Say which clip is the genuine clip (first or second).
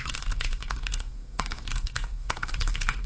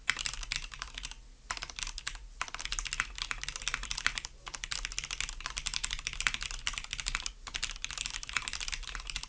second